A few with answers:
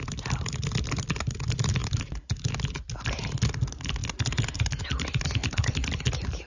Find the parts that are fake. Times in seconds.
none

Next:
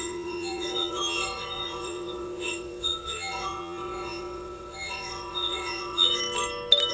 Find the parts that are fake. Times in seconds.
0.0-6.2 (vocoder, WaveNeXt)

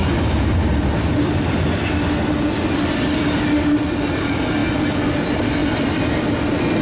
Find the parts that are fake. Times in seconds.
none